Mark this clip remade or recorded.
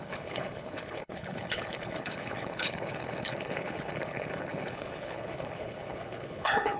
remade